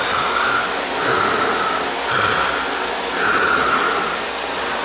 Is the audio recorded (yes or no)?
yes